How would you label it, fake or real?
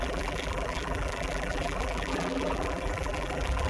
fake